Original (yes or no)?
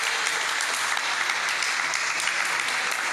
yes